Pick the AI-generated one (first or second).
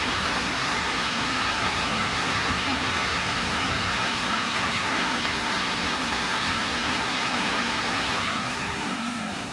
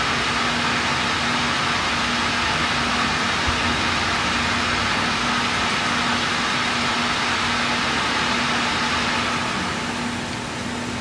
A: first